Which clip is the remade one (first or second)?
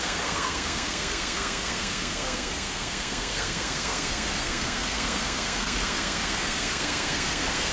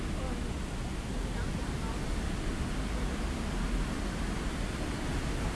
first